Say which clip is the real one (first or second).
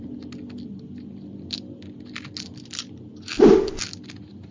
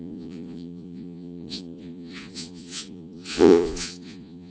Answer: first